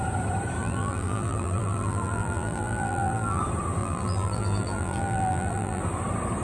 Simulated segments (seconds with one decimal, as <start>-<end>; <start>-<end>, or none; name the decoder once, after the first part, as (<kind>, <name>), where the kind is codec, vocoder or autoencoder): 0.6-3.4 (vocoder, BigVGAN v2); 3.8-5.8